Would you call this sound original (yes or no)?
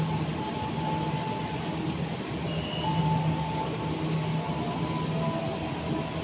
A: yes